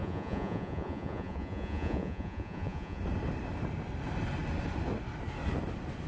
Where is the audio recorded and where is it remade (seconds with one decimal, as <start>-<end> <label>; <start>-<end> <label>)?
0.0-3.0 remade; 3.0-6.1 recorded